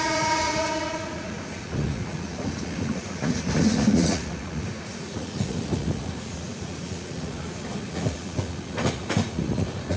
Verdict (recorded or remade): remade